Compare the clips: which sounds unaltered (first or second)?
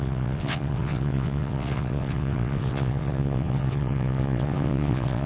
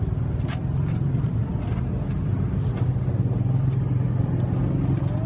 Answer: second